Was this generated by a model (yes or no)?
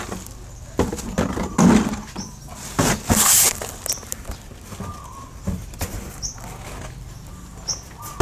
no